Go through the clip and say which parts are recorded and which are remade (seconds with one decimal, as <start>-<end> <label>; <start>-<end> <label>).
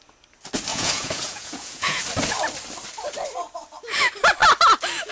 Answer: 0.0-0.7 recorded; 0.7-2.0 remade; 2.0-5.1 recorded